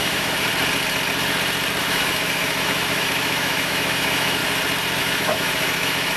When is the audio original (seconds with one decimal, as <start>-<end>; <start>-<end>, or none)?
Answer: 0.5-1.8; 4.4-5.0